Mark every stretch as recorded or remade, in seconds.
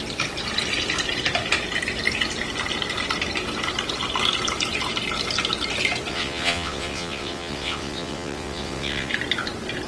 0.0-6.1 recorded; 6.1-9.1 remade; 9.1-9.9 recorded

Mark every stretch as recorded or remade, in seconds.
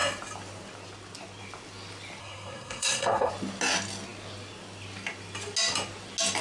0.0-2.2 recorded; 2.2-3.3 remade; 3.3-6.4 recorded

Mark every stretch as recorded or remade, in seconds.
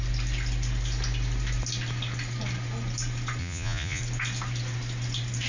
0.0-3.4 recorded; 3.4-4.0 remade; 4.0-5.5 recorded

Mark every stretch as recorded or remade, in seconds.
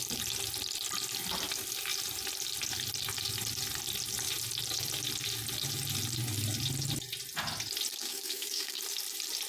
0.0-7.9 recorded; 7.9-8.8 remade; 8.8-9.5 recorded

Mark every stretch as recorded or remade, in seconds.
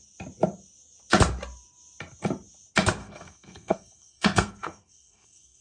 0.0-3.0 recorded; 3.0-5.6 remade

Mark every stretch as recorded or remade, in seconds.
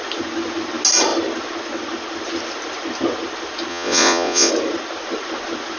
0.0-3.7 recorded; 3.7-4.5 remade; 4.5-5.8 recorded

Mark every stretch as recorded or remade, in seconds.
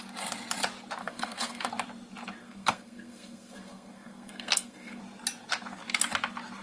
0.0-1.0 recorded; 1.0-1.7 remade; 1.7-2.4 recorded; 2.4-5.0 remade; 5.0-6.6 recorded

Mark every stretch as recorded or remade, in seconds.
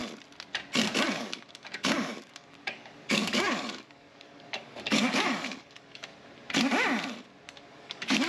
0.0-1.1 recorded; 1.1-6.1 remade; 6.1-7.6 recorded; 7.6-8.3 remade